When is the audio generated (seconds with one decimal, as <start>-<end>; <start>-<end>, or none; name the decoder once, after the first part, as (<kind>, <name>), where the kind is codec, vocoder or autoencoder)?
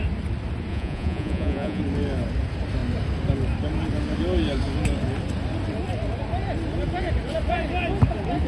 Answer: 0.7-1.8 (vocoder, Vocos)